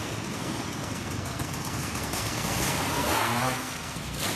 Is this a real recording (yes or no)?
no